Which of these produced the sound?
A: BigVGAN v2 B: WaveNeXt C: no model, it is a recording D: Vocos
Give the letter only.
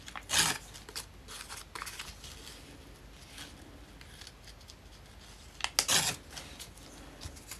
C